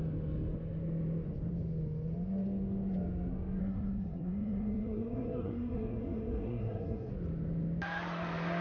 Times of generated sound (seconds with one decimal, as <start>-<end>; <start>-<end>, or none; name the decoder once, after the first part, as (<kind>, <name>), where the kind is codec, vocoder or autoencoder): 3.6-7.1 (codec, SNAC)